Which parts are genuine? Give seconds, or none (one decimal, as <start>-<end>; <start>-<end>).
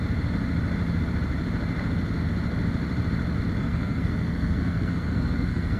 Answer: 0.0-3.6